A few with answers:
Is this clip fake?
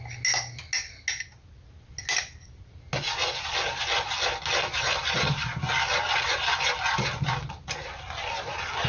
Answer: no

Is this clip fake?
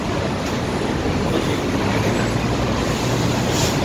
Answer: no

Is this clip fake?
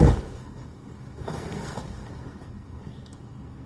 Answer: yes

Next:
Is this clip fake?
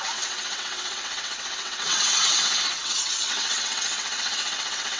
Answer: yes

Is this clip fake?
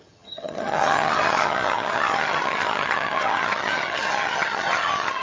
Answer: yes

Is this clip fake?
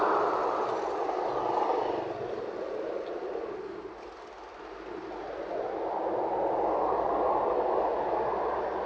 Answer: no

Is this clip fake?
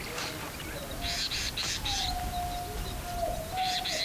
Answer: no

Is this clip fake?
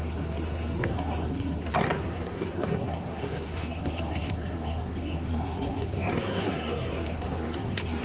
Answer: yes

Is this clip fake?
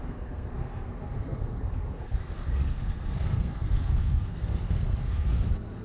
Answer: yes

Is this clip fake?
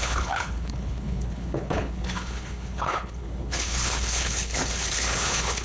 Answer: yes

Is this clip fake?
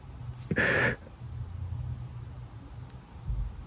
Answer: no